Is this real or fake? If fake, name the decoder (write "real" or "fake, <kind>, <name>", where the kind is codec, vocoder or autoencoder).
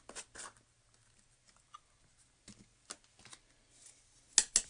real